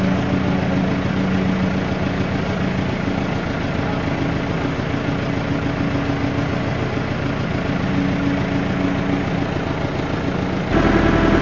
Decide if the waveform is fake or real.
real